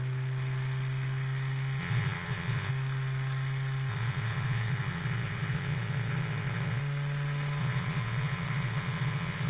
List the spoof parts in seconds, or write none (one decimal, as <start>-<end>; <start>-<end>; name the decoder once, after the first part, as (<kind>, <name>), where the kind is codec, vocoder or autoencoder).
1.8-2.7 (vocoder, Vocos); 3.9-6.8; 7.6-9.5